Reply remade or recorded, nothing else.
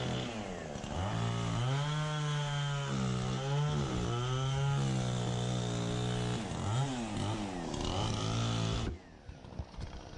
recorded